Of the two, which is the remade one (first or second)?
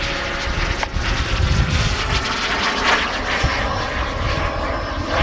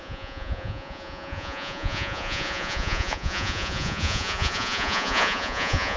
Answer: second